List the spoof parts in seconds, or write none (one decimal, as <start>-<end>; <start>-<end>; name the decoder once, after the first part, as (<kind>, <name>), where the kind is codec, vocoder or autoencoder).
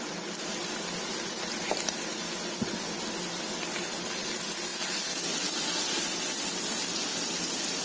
none